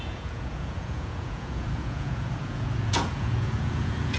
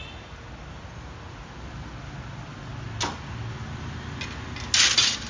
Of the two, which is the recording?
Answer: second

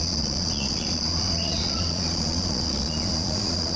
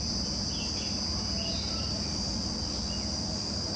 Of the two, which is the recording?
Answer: second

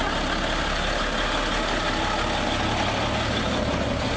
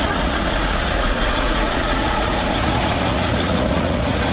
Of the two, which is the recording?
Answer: first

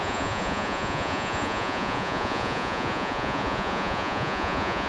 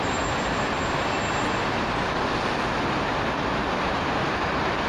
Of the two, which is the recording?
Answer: second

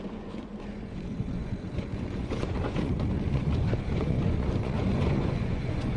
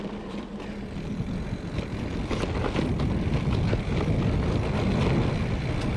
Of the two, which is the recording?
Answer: second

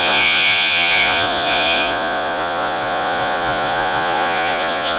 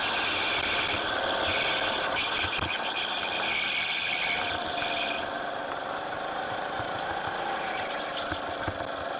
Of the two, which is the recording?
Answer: second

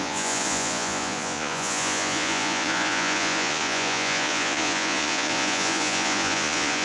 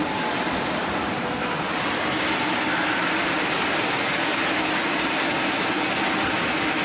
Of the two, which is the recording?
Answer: second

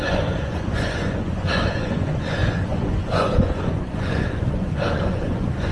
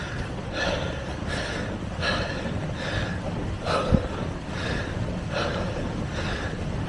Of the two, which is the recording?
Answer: second